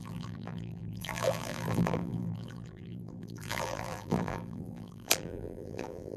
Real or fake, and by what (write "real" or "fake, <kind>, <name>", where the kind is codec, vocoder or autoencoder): fake, vocoder, BigVGAN v2